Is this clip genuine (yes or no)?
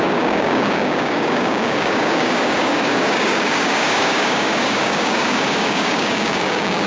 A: no